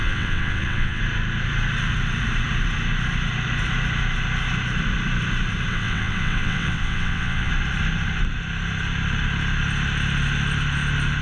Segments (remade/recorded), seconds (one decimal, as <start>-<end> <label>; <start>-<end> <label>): 0.0-1.0 remade; 1.0-5.7 recorded; 5.7-7.5 remade; 7.5-11.2 recorded